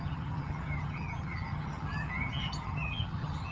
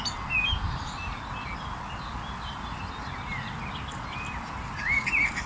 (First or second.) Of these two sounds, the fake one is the first